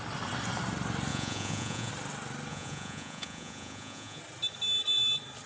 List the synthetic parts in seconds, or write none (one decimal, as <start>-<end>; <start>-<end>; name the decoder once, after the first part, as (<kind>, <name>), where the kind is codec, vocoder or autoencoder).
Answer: 1.1-1.9 (vocoder, Vocos); 2.5-4.2

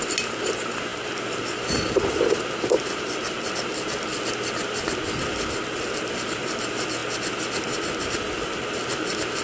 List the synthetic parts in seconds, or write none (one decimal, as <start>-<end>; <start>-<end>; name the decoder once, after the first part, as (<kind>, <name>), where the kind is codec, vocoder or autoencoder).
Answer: none

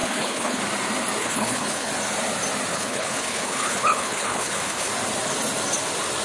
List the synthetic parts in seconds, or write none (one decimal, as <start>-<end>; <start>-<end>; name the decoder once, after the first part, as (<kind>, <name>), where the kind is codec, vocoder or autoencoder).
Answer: 0.0-0.6 (codec, HILCodec); 1.2-1.9; 2.7-4.9

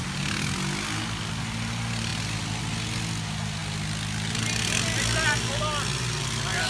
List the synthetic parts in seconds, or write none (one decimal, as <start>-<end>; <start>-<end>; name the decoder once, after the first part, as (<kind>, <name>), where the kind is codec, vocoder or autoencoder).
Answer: none